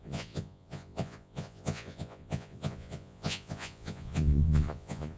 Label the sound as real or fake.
fake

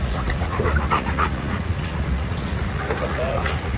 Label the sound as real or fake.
fake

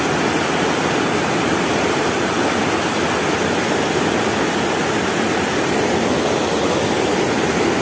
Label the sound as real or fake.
real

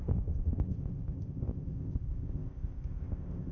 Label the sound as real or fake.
fake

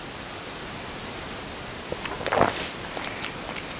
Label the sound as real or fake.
real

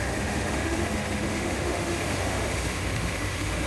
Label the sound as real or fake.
fake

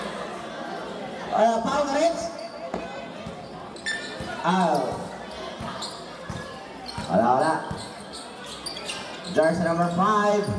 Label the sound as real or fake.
real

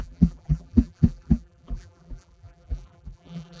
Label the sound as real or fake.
fake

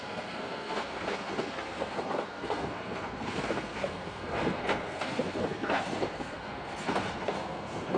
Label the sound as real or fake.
fake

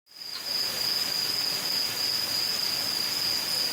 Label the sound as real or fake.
real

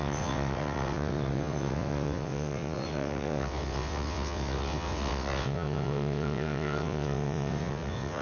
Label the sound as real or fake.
fake